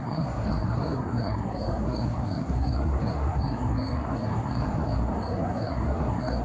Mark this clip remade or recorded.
remade